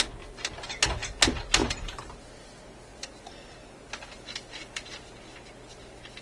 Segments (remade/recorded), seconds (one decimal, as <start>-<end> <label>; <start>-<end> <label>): 0.0-1.6 recorded; 1.6-2.1 remade; 2.1-6.2 recorded

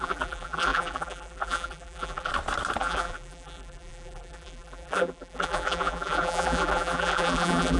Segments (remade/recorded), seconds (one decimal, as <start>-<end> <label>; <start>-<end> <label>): 0.0-2.3 remade; 2.3-2.8 recorded; 2.8-7.8 remade

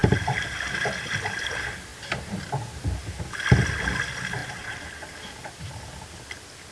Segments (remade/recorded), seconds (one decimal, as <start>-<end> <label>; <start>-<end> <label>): 0.0-0.9 remade; 0.9-4.4 recorded; 4.4-5.0 remade; 5.0-6.7 recorded

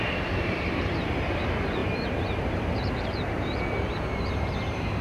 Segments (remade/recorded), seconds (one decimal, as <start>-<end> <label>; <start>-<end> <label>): 0.0-5.0 remade

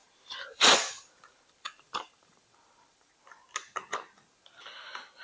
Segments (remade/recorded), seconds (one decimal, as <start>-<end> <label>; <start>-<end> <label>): 0.0-3.1 remade; 3.1-5.2 recorded

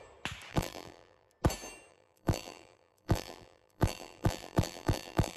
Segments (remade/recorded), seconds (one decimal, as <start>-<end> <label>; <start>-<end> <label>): 0.0-0.5 recorded; 0.5-1.3 remade; 1.3-1.9 recorded; 1.9-5.4 remade

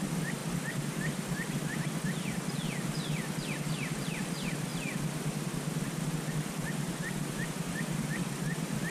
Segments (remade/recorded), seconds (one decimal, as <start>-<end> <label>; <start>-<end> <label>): 0.0-4.7 remade; 4.7-7.3 recorded; 7.3-8.9 remade